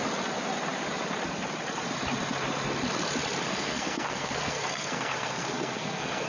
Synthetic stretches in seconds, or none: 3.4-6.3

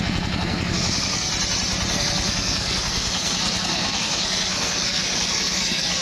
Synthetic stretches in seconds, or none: 0.0-1.3; 1.9-6.0

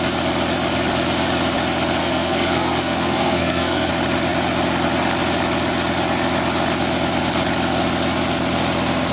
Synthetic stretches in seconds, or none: 2.0-3.9

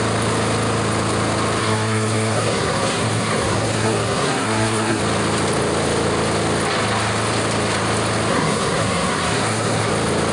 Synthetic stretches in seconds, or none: 1.6-5.0; 8.3-9.9

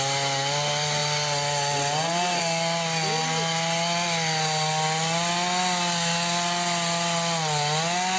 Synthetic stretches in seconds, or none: none